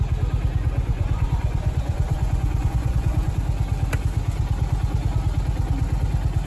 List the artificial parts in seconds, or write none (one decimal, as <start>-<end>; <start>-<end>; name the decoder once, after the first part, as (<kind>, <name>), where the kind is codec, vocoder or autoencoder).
0.8-3.3 (vocoder, Vocos)